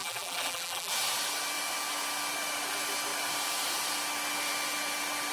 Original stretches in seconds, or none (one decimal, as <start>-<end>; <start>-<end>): 0.9-5.3